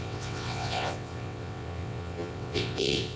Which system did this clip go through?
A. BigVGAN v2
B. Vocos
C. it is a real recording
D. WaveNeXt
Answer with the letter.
D